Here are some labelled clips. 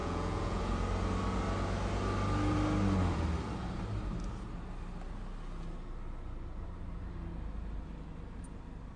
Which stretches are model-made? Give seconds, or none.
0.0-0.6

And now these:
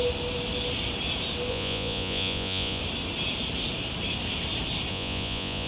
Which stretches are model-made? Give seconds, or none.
1.5-2.8; 4.9-5.7

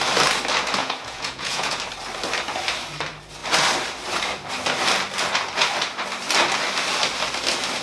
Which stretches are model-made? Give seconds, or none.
0.8-1.8

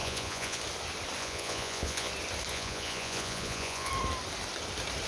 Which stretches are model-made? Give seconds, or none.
0.0-0.6; 1.2-2.1; 2.5-3.9

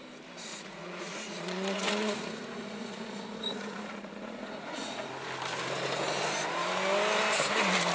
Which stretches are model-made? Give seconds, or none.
0.5-5.1

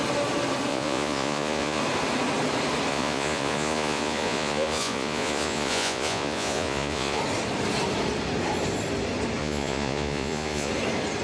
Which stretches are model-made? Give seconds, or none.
0.7-1.8; 2.9-7.2; 9.4-10.7

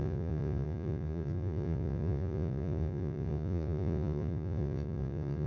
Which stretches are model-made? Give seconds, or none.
0.0-5.5